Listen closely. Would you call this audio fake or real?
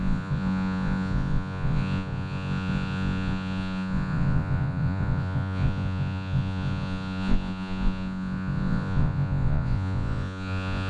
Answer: fake